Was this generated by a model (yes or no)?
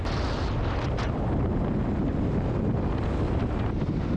no